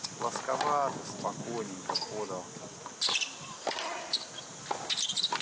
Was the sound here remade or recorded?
recorded